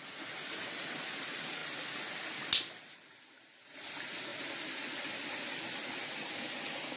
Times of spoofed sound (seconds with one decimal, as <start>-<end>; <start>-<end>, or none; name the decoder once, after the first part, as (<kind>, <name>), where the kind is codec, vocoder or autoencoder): 0.0-1.6 (vocoder, BigVGAN v2); 3.9-4.3